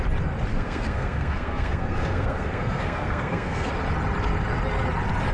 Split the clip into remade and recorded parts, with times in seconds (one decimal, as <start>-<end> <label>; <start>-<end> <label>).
0.0-0.5 recorded; 0.5-3.7 remade; 3.7-5.3 recorded